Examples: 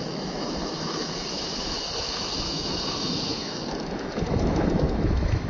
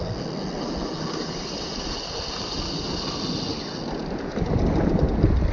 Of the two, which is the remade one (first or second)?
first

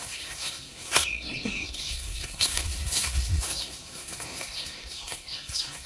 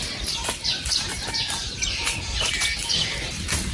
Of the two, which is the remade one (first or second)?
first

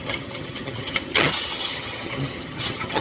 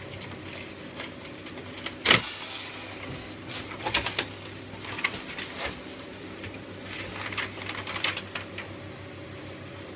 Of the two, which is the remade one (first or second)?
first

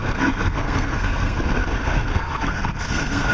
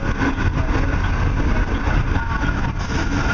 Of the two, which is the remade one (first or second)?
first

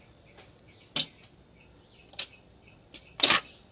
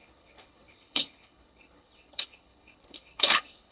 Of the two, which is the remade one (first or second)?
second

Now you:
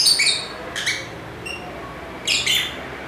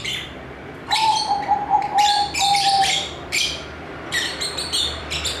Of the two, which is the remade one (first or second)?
second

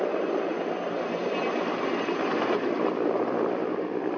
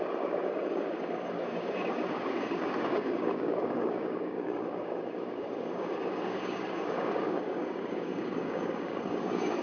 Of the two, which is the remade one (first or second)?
second